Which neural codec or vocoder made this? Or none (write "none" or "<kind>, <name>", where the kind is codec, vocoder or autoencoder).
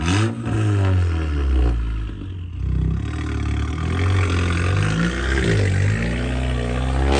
none